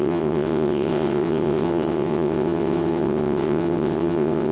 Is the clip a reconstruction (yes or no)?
yes